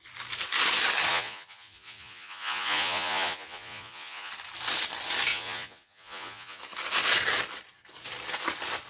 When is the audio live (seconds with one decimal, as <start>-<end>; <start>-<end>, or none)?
0.0-1.1; 4.3-5.3; 6.6-8.9